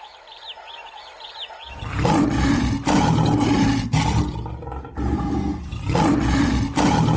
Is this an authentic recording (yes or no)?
yes